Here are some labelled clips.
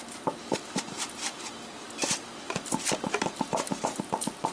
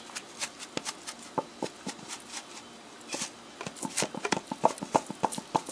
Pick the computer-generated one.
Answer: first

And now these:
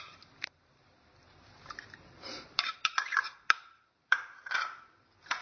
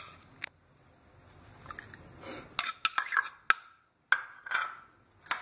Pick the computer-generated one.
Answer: first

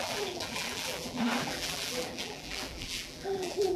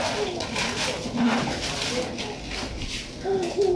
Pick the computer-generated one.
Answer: first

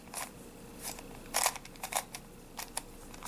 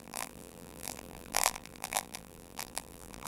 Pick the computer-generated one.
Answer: second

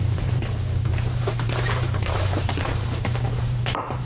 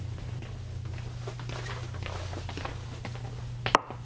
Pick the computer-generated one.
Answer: first